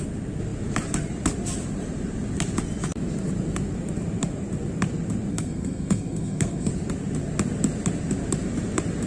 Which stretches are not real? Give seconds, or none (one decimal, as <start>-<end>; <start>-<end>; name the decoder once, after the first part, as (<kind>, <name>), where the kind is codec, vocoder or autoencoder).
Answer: 5.3-6.7 (codec, SNAC)